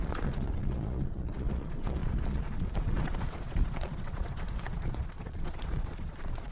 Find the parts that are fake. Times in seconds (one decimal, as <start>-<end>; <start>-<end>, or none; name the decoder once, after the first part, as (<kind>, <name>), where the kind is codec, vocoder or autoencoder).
0.0-6.5 (vocoder, Vocos)